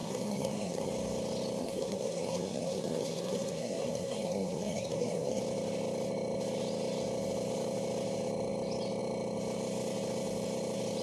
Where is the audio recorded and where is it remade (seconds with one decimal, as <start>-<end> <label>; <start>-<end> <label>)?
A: 0.0-0.9 remade; 0.9-1.6 recorded; 1.6-5.4 remade; 5.4-11.0 recorded